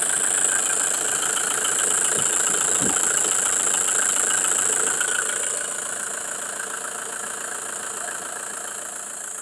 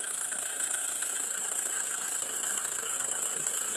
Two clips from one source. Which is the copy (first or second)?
second